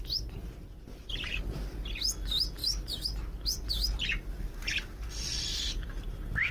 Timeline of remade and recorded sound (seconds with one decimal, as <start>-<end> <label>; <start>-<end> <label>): 0.0-0.9 recorded; 0.9-1.4 remade; 1.4-6.5 recorded